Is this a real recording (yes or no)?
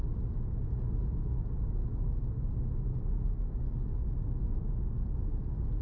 yes